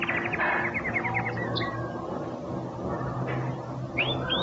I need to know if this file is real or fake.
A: real